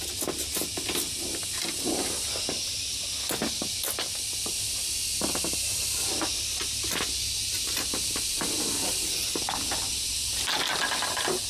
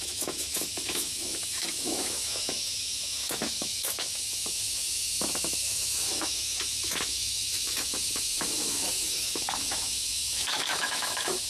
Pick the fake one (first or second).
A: second